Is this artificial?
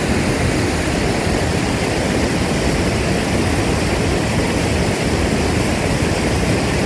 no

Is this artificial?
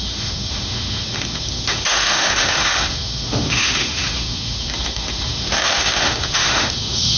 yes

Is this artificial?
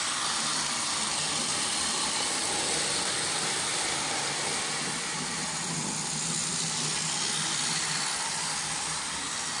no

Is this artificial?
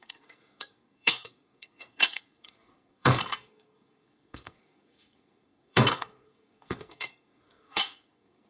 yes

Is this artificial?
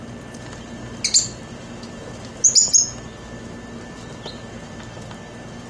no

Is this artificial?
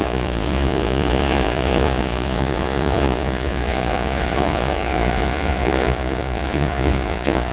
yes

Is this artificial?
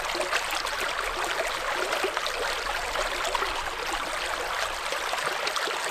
no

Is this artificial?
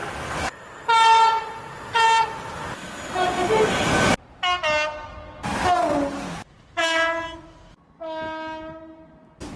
no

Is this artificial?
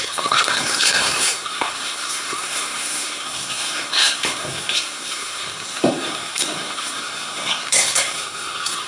yes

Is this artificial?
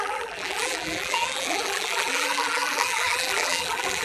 yes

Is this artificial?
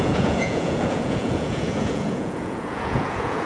yes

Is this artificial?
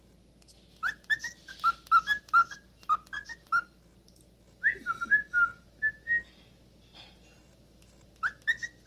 no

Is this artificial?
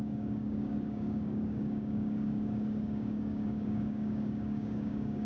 yes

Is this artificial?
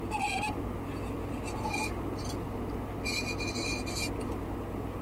no